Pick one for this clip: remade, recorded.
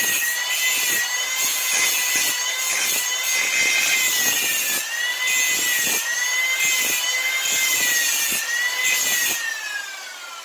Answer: recorded